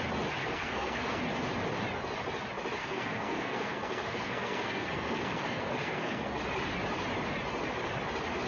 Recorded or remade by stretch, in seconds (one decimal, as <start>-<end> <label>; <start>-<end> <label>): 0.0-0.4 recorded; 0.4-1.2 remade; 1.2-2.8 recorded; 2.8-6.4 remade; 6.4-8.5 recorded